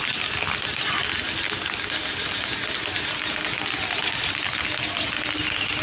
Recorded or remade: recorded